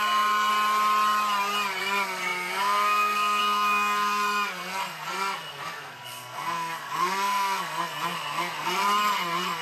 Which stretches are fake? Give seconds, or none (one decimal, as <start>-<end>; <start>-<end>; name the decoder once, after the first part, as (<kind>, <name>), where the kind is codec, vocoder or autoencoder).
0.0-0.5 (codec, SNAC); 1.8-9.6